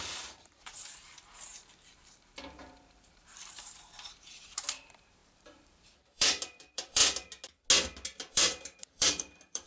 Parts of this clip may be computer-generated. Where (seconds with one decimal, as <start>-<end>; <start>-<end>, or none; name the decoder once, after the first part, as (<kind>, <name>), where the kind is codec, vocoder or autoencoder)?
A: 0.0-7.0 (vocoder, BigVGAN v2); 8.3-9.7